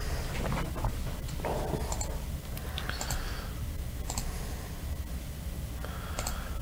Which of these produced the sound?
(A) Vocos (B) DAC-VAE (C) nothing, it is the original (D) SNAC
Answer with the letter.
C